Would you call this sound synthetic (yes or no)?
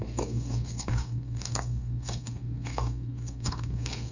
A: yes